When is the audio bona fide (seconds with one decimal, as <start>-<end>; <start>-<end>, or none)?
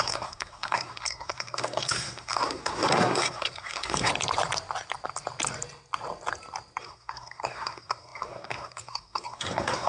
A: 4.1-6.8